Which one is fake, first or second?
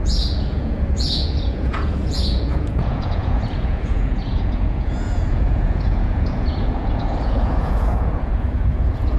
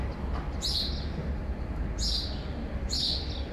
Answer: first